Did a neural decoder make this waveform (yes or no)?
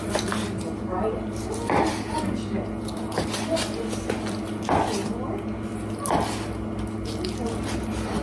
no